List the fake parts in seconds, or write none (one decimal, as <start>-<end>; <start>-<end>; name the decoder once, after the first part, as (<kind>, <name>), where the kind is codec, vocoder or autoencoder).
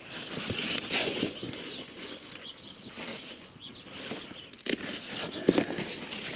0.6-2.5 (vocoder, Vocos); 3.1-3.7